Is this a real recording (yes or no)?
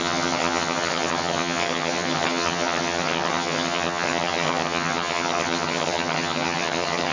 no